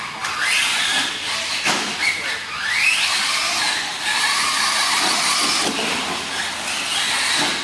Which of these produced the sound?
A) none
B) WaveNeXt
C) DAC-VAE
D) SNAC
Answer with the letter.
A